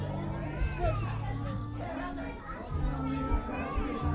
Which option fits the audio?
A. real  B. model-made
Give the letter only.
A